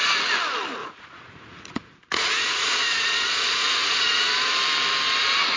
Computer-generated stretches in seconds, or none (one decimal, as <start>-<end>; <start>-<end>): 0.8-4.2

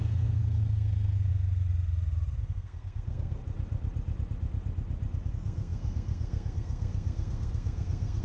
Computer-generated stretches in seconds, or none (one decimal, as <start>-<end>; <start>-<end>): 0.0-1.3; 2.4-3.4; 5.3-8.2

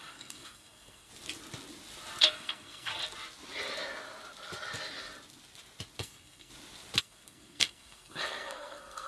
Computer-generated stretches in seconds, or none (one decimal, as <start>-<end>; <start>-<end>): 0.0-1.1; 2.2-2.9; 6.0-6.5; 7.0-9.1